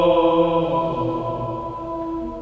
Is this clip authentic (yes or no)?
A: yes